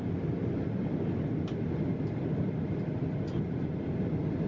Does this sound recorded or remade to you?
recorded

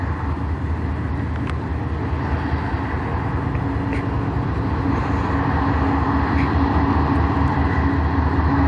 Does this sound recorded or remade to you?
recorded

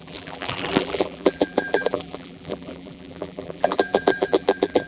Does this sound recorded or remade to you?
remade